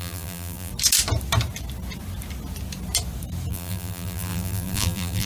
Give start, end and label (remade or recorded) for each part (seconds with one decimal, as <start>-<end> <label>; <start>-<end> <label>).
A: 0.0-0.7 remade; 0.7-3.5 recorded; 3.5-5.3 remade